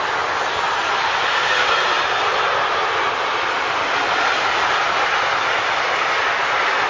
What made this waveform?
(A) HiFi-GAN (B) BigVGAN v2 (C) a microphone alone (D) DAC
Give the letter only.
B